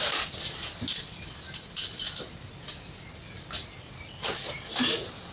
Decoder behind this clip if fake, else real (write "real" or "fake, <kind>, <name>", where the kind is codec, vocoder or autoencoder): real